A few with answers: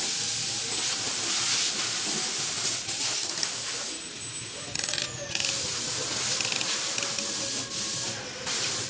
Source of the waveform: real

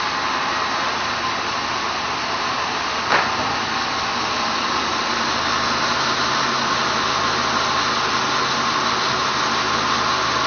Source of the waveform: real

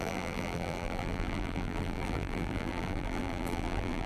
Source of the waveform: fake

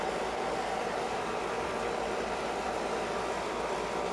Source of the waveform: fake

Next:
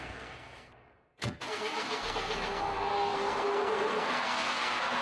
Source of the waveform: fake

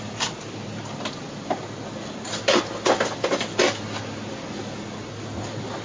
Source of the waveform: real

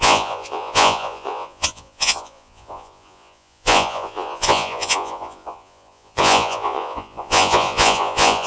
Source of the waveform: fake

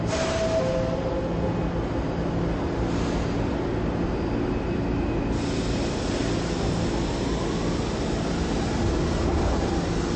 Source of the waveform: real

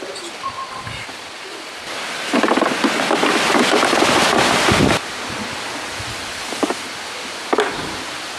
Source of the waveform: real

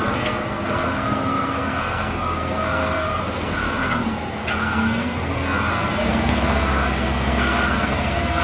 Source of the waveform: fake